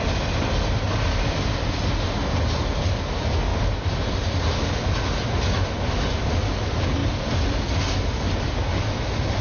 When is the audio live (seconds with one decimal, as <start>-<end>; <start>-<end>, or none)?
0.0-7.0; 7.7-9.4